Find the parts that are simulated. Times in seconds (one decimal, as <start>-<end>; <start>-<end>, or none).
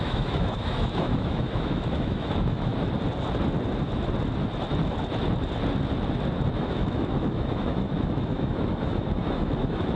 0.0-2.7; 6.6-10.0